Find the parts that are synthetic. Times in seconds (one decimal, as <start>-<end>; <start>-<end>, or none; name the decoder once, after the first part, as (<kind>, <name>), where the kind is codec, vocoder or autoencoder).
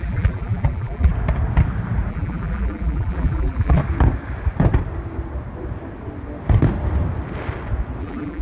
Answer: 0.0-1.1 (vocoder, BigVGAN v2); 2.1-3.8; 8.0-8.4